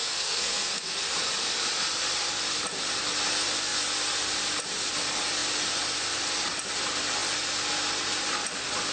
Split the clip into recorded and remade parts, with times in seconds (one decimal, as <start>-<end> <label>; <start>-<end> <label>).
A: 0.0-1.0 remade; 1.0-8.9 recorded